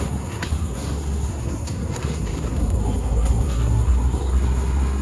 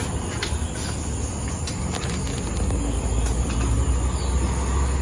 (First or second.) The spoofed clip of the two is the first